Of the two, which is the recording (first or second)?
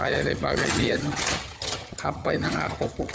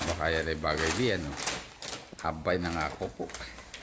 second